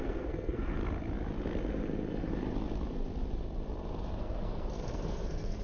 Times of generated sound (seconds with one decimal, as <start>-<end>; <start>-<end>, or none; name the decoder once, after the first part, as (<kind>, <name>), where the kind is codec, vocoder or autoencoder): 0.0-0.8 (codec, SNAC); 4.2-5.6